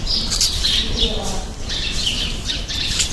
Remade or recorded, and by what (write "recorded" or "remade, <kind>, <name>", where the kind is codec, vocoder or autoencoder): recorded